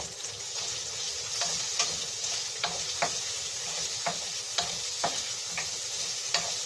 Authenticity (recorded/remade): recorded